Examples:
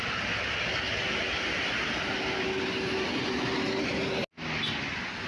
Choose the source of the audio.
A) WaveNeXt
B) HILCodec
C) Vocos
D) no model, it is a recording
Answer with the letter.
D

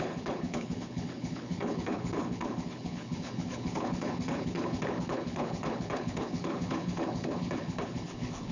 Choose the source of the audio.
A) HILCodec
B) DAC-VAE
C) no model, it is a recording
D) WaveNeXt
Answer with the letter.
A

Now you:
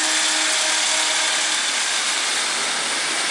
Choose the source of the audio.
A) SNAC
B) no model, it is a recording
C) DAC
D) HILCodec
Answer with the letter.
B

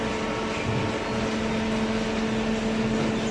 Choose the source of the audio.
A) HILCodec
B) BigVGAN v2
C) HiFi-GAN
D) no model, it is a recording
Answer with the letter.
D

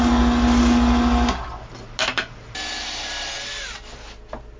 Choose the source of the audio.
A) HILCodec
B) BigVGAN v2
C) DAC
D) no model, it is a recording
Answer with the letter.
D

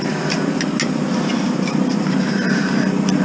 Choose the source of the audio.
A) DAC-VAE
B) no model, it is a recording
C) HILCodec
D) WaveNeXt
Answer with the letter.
B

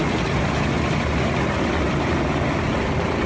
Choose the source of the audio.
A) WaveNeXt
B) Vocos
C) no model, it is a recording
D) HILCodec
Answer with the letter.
C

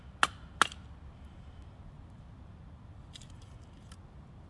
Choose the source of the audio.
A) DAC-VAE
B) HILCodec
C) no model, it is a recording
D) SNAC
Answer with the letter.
C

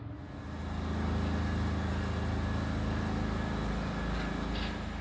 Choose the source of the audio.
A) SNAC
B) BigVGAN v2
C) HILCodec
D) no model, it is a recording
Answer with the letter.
D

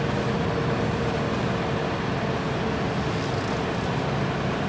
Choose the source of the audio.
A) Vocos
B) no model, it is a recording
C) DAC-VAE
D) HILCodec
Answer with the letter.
B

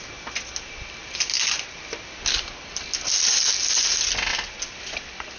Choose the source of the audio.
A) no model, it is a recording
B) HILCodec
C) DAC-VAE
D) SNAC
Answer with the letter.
A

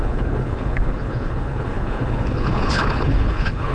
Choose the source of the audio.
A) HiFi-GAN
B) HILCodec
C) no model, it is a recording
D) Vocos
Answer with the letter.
B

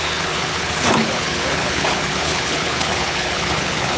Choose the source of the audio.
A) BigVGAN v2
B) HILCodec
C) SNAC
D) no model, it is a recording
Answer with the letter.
B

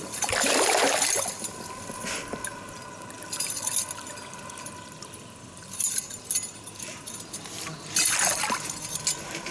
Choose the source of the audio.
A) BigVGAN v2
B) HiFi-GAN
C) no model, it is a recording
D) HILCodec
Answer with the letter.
C